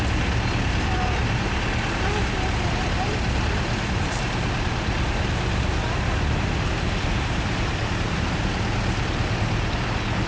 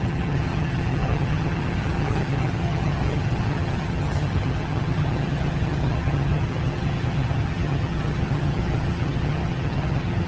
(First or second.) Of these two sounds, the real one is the first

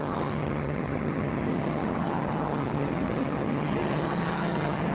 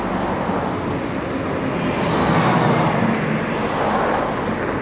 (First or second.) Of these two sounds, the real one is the second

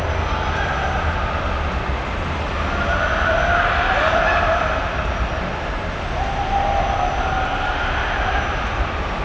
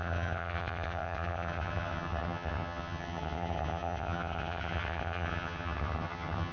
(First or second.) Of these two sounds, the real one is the first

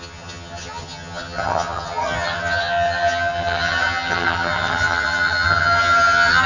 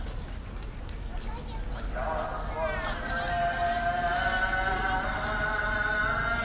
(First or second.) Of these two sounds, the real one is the second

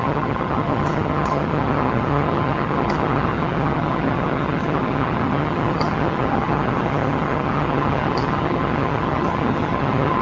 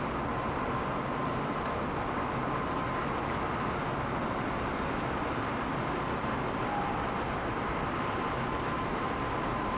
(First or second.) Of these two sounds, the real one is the second